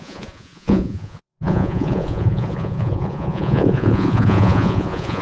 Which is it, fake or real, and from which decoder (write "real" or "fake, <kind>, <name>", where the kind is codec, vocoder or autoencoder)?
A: fake, vocoder, Vocos